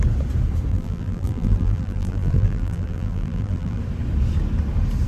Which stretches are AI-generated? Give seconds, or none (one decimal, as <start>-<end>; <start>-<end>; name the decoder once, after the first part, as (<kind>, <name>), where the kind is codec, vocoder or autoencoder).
0.7-3.8 (vocoder, BigVGAN v2)